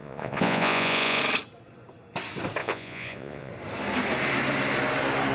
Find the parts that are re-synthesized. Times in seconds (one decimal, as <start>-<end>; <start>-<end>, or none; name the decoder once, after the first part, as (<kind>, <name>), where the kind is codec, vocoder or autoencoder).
0.0-1.2 (vocoder, Vocos); 2.6-3.5